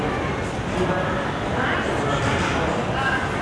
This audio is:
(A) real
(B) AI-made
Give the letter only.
A